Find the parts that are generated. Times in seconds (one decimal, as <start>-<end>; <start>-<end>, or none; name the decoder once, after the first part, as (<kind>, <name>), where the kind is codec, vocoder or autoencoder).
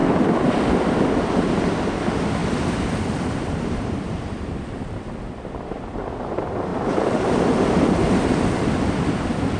2.4-5.2 (vocoder, BigVGAN v2); 6.7-8.4